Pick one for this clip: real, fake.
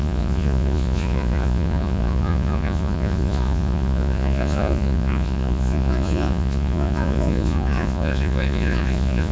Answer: fake